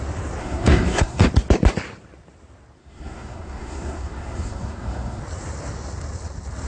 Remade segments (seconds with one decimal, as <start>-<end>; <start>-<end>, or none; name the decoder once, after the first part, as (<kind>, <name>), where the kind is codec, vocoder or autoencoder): 0.4-1.2 (codec, SNAC); 2.8-5.2